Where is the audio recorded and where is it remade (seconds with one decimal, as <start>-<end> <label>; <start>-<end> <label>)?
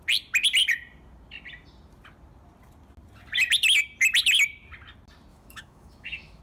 0.0-5.3 recorded; 5.3-6.4 remade